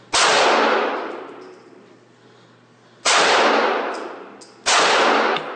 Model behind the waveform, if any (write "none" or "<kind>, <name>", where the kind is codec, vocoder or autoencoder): none